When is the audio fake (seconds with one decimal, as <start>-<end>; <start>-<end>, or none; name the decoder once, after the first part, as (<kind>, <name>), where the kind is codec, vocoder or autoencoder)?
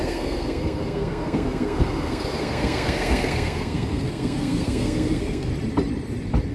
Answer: 0.0-5.5 (codec, SNAC)